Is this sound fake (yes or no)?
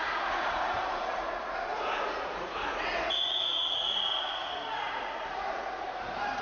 yes